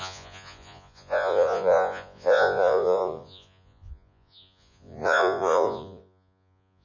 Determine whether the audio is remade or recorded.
remade